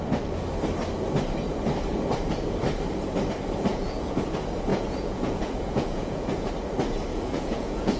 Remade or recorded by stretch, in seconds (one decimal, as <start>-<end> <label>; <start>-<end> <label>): 0.0-3.7 recorded; 3.7-4.2 remade; 4.2-4.7 recorded; 4.7-6.5 remade; 6.5-7.1 recorded; 7.1-8.0 remade